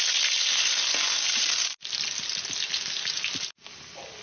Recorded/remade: recorded